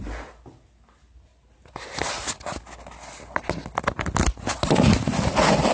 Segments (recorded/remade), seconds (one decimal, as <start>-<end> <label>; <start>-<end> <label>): 0.0-5.7 recorded